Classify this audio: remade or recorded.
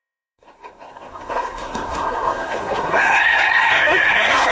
remade